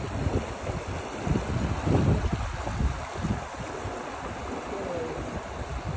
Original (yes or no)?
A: yes